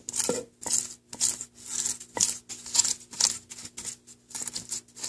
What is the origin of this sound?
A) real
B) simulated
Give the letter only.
A